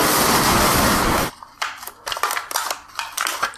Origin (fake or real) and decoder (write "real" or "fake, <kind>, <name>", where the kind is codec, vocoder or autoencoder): real